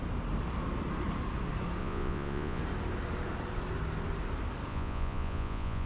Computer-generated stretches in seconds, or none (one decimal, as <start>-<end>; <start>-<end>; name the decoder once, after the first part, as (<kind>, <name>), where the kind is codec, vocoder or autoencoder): 1.8-2.6 (vocoder, Vocos); 4.7-5.9

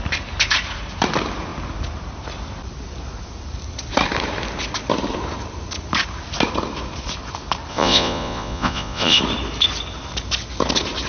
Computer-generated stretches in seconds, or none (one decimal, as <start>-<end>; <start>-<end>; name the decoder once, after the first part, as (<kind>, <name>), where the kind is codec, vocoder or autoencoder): 7.7-9.2 (vocoder, Vocos)